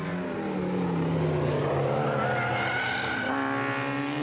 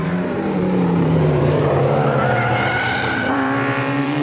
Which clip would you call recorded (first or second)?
first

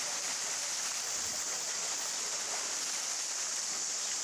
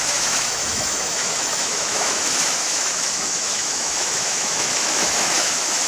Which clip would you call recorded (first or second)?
first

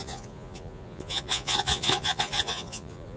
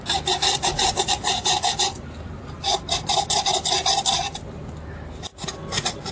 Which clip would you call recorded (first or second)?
second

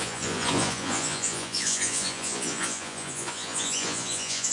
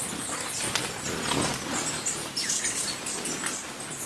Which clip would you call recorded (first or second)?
second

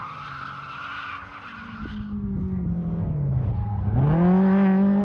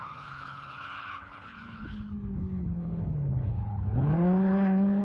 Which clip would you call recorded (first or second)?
first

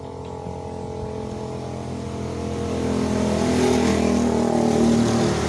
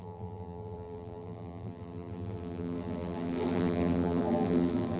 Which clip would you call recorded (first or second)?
first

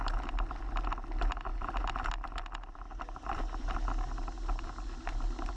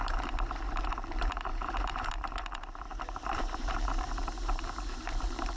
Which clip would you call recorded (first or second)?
first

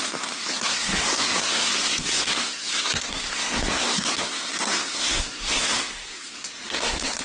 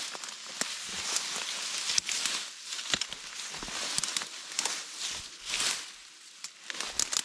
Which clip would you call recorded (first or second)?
second